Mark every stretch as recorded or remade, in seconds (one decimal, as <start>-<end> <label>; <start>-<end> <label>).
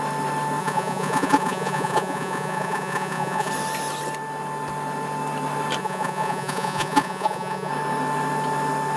0.0-0.6 recorded; 0.6-3.5 remade; 3.5-5.8 recorded; 5.8-7.7 remade; 7.7-9.0 recorded